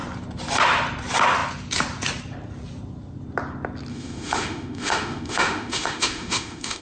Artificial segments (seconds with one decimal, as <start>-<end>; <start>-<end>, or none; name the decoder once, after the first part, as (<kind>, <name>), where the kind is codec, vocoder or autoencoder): 3.9-6.8 (autoencoder, DAC-VAE)